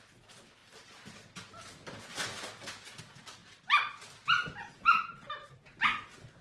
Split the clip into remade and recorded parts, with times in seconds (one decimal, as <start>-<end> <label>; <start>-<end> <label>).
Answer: 0.0-6.4 recorded